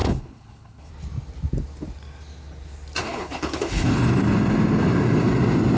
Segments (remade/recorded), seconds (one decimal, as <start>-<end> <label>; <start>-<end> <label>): 0.0-0.9 remade; 0.9-3.0 recorded; 3.0-3.9 remade; 3.9-5.8 recorded